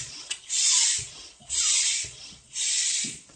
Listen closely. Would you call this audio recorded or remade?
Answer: remade